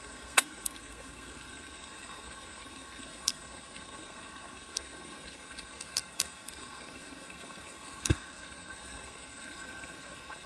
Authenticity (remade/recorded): remade